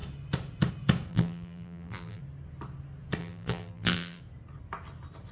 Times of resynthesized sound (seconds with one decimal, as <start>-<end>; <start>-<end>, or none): 1.1-2.2; 3.2-4.2